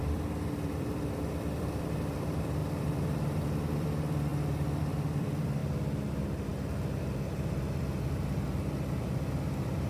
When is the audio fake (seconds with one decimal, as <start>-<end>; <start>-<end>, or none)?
0.0-4.3; 4.8-5.6; 6.1-6.5; 9.0-9.9